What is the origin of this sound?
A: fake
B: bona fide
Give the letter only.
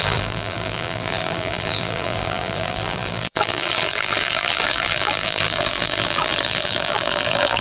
A